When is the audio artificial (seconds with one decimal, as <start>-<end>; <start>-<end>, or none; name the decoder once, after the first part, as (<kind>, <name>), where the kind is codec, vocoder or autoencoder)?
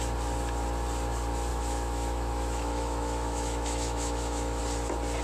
1.5-4.6 (autoencoder, DAC-VAE)